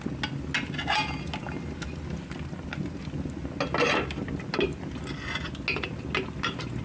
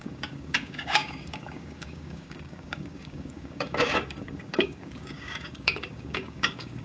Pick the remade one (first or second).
second